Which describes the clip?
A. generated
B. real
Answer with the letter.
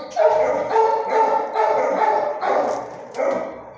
B